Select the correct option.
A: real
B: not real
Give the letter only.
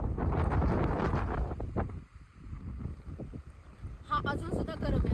A